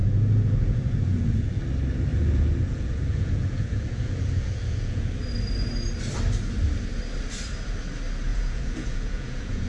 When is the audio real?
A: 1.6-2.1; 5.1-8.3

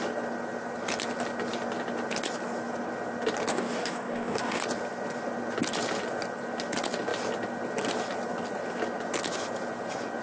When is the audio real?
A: 0.0-3.5; 4.6-10.2

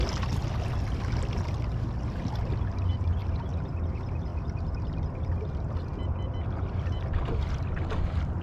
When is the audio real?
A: 0.0-3.2; 3.8-4.3; 5.0-8.4

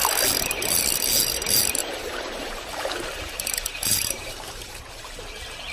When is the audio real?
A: 0.0-1.8; 4.8-5.7

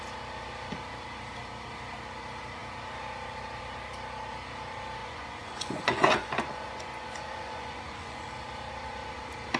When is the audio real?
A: 0.0-5.0; 8.3-9.6

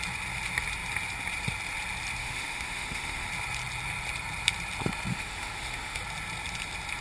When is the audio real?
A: 0.0-2.2; 3.3-5.1; 6.0-7.0